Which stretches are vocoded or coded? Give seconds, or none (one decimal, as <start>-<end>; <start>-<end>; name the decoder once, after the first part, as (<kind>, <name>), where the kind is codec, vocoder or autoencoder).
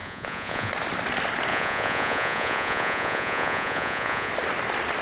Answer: 0.0-0.7 (vocoder, Vocos); 1.5-4.3